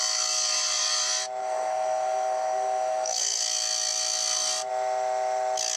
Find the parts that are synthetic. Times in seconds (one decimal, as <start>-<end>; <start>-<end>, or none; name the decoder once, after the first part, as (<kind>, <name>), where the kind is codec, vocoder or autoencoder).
1.4-3.4 (codec, SNAC)